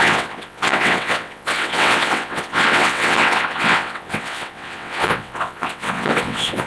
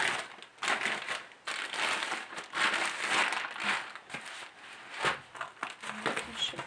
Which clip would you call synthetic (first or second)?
first